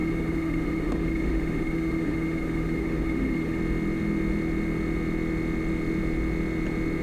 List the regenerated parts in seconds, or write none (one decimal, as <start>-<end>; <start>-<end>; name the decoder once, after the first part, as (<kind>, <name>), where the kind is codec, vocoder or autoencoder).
0.0-3.6 (autoencoder, DAC-VAE)